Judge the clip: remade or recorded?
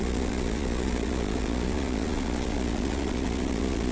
remade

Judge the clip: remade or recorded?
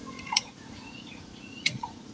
remade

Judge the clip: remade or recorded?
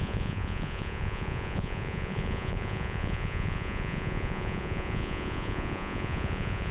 remade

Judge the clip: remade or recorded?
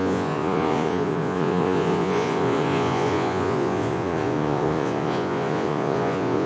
remade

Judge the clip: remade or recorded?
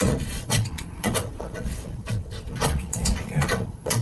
remade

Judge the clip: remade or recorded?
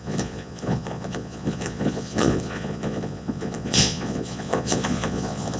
remade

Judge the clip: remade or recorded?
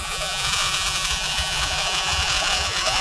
remade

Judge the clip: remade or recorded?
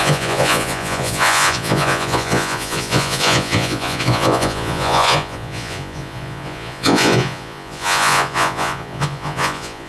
remade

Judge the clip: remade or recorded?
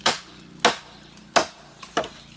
recorded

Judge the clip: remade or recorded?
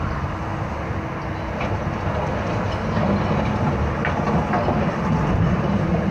recorded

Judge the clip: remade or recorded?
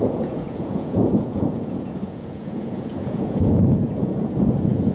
remade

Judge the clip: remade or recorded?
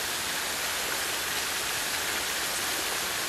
recorded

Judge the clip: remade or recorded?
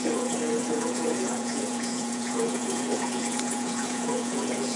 remade